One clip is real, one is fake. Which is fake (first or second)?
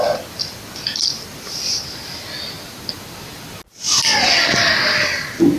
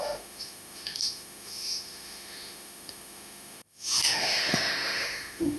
second